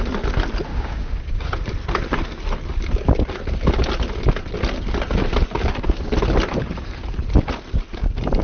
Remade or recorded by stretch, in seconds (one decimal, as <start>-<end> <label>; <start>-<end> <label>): 0.0-0.7 recorded; 0.7-1.3 remade; 1.3-8.4 recorded